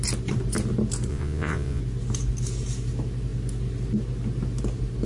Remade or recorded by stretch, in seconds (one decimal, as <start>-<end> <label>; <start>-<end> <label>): 0.0-1.1 recorded; 1.1-1.8 remade; 1.8-5.1 recorded